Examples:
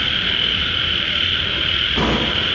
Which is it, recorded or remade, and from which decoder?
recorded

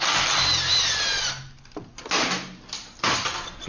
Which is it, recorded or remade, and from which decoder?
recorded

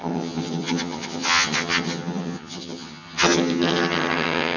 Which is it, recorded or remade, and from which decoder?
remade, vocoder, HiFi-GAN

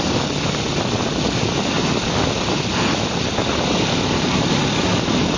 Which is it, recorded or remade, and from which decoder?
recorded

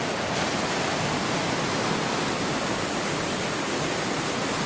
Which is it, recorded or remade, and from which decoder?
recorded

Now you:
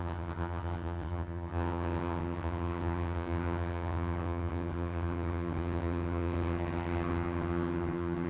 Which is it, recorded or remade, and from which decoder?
remade, vocoder, HiFi-GAN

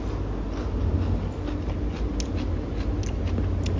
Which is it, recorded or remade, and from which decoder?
recorded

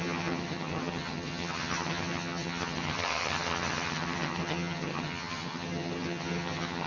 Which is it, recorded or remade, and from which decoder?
remade, vocoder, HiFi-GAN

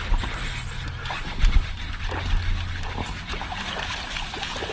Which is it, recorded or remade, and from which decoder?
recorded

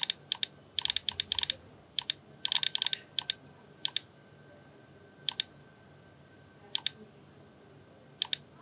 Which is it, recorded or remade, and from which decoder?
recorded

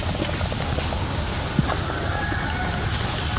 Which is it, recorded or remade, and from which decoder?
recorded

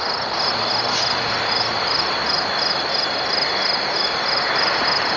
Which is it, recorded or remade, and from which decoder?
recorded